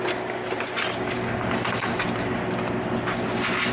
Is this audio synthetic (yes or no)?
no